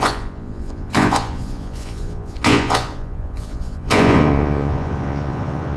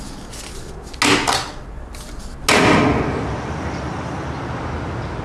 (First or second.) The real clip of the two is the second